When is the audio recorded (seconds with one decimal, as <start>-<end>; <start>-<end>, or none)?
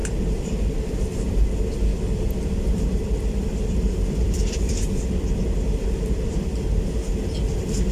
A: 0.6-1.9; 6.6-7.9